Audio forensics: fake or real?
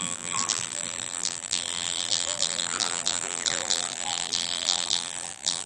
fake